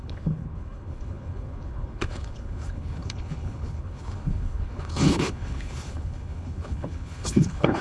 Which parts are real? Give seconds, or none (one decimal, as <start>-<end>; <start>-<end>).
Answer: none